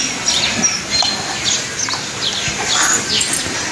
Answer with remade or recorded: recorded